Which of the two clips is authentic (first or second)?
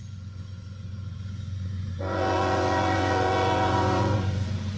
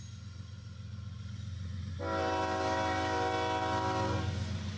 second